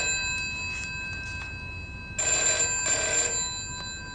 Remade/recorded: recorded